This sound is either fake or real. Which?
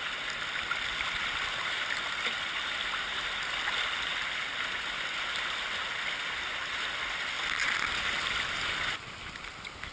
real